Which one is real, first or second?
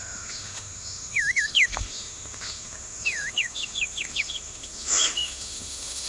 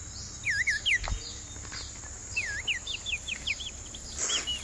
second